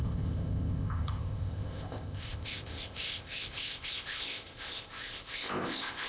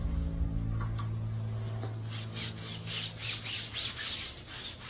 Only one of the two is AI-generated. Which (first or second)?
first